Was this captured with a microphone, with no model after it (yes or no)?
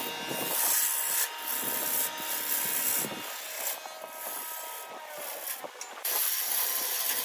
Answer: yes